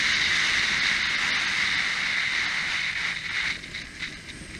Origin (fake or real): real